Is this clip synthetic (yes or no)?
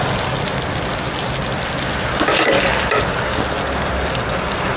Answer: no